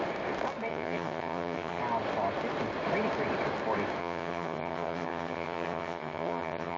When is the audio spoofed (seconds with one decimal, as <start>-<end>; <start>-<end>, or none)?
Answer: 0.7-1.8; 4.0-6.8